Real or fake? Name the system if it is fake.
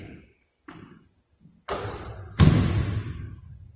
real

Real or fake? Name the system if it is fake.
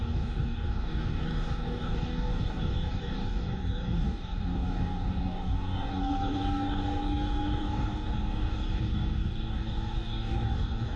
fake, codec, DAC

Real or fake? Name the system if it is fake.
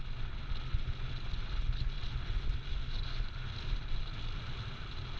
real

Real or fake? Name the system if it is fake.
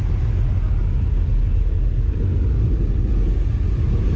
real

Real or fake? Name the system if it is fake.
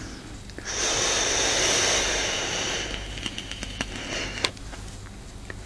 real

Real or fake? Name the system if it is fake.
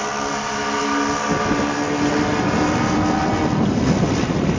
real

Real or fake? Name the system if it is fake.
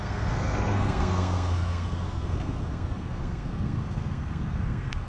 fake, codec, SNAC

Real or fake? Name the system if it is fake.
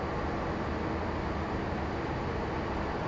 real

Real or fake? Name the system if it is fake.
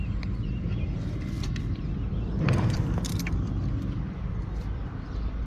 real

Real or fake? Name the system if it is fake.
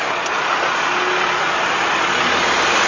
real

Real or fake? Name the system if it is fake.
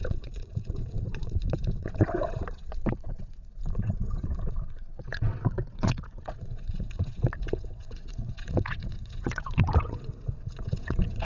fake, vocoder, WaveNeXt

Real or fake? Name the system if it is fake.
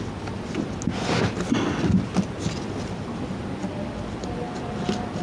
real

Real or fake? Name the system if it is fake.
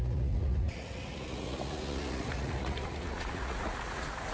fake, vocoder, Vocos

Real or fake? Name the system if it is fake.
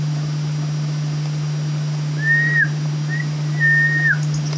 real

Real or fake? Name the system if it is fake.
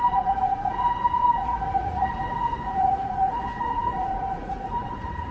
fake, vocoder, Vocos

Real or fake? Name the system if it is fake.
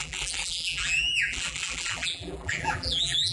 fake, vocoder, BigVGAN v2